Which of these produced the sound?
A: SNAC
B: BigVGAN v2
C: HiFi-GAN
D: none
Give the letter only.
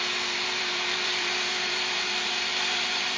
B